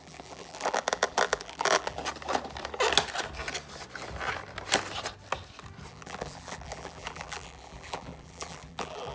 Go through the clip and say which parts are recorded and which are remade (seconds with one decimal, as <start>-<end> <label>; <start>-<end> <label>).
0.0-2.0 remade; 2.0-5.9 recorded; 5.9-9.1 remade